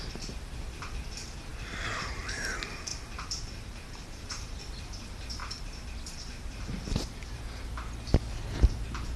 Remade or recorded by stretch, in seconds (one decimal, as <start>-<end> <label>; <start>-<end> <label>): 0.0-1.5 recorded; 1.5-2.2 remade; 2.2-2.9 recorded; 2.9-4.6 remade; 4.6-5.4 recorded; 5.4-6.7 remade; 6.7-9.2 recorded